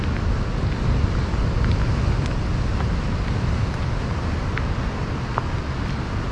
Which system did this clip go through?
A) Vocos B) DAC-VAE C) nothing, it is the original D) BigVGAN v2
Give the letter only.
C